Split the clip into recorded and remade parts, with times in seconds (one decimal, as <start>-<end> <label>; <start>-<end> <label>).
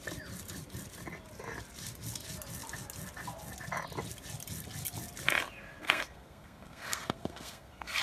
0.0-5.8 recorded; 5.8-8.0 remade